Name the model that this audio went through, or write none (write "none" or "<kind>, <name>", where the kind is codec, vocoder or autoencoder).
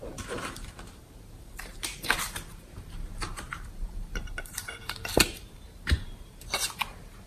vocoder, BigVGAN v2